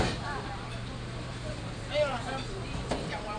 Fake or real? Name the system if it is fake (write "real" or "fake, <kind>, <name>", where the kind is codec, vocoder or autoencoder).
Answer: fake, vocoder, BigVGAN v2